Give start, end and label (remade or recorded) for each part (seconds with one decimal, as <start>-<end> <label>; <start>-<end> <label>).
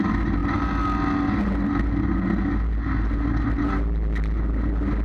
0.0-5.0 recorded